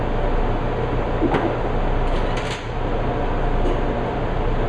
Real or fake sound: real